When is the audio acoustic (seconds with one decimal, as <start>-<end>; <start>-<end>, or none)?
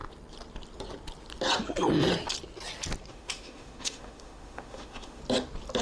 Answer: 0.0-3.1; 5.2-5.8